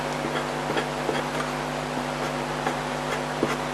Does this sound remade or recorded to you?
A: recorded